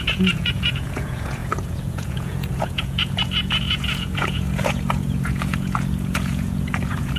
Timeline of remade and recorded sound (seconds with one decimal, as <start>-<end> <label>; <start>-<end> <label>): 0.0-7.2 remade